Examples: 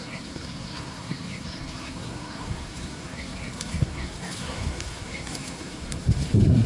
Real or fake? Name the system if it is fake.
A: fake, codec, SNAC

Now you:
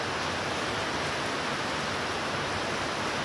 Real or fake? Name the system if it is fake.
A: real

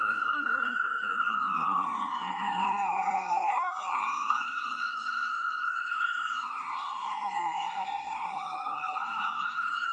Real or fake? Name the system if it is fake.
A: fake, codec, SNAC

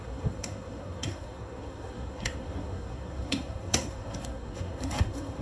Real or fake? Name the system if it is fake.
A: fake, codec, SNAC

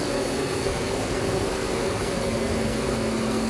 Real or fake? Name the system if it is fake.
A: fake, codec, SNAC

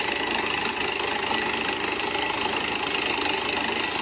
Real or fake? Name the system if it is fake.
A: real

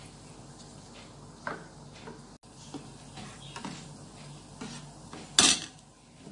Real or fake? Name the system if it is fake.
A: real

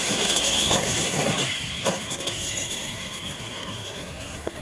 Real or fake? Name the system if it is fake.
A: fake, codec, SNAC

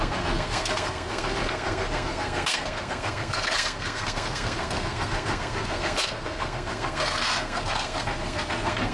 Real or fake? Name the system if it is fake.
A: fake, codec, SNAC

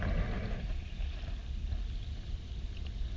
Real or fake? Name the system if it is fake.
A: real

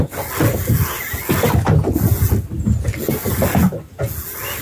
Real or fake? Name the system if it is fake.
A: real